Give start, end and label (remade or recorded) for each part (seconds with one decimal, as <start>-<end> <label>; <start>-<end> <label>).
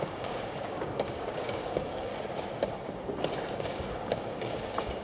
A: 0.0-2.1 remade; 2.1-3.5 recorded; 3.5-5.0 remade